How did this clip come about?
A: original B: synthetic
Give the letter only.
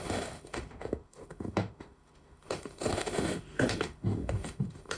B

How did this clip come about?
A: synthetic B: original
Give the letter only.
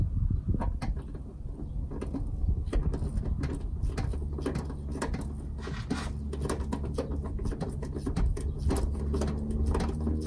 B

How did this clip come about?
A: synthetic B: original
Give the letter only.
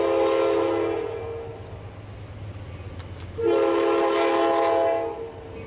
B